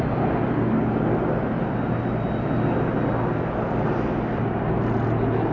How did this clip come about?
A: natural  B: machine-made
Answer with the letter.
A